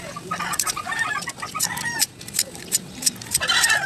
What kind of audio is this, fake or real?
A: real